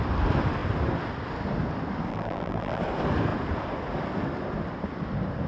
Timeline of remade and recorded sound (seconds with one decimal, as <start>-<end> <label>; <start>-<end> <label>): 0.0-2.1 recorded; 2.1-2.8 remade; 2.8-5.5 recorded